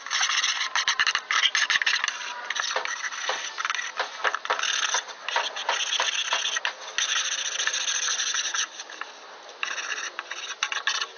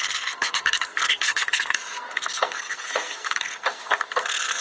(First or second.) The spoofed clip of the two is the second